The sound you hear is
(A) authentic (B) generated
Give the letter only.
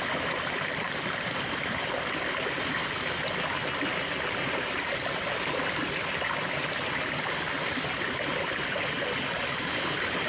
A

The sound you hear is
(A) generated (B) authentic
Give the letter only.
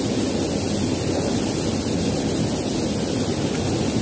B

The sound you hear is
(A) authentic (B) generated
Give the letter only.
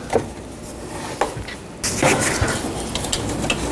A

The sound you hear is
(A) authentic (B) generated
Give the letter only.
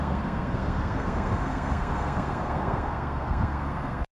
B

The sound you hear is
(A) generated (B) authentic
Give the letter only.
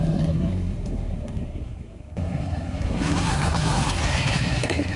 A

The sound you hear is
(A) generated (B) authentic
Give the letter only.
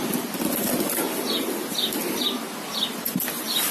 B